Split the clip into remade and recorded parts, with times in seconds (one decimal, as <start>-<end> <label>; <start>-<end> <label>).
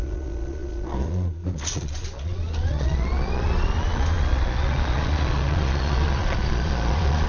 0.0-7.3 remade